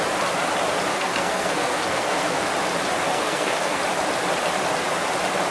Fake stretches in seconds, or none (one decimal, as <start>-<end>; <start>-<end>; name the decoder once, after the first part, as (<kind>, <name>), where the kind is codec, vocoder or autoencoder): 0.9-2.5 (codec, SNAC); 3.1-3.8